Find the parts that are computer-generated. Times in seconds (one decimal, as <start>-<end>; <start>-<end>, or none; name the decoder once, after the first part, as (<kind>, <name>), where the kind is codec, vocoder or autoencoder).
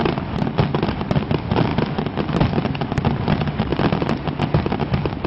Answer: none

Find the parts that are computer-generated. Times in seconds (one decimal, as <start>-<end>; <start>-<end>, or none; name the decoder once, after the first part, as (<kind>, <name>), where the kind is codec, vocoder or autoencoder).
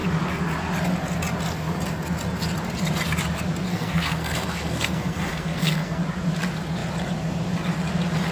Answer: 3.7-6.0 (codec, SNAC)